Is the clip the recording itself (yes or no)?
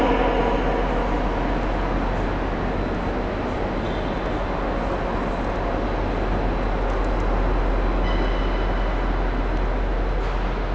yes